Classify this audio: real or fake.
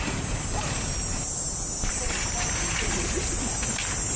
fake